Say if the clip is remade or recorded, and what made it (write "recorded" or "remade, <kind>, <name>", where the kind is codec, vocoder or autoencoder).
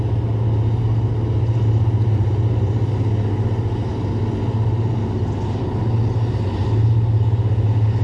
recorded